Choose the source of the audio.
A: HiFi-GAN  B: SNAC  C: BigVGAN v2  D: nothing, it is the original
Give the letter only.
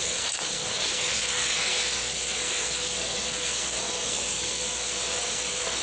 B